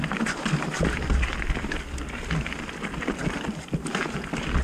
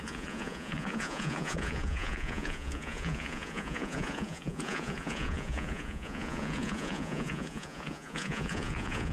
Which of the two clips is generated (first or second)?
second